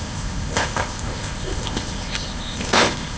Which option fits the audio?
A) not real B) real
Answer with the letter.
A